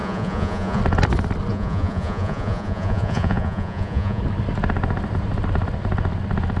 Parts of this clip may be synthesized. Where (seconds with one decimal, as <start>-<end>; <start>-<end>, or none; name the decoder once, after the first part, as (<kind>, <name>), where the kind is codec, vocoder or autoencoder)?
0.0-0.8 (vocoder, Vocos); 1.5-4.2